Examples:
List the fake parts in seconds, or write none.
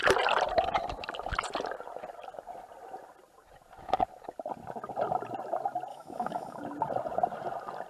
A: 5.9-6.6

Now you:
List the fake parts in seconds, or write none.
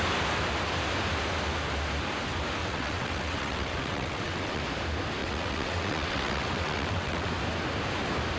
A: 2.6-4.6; 5.2-7.3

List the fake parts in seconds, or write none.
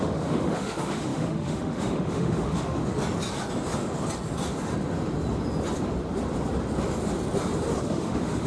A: 0.0-2.8; 7.8-8.5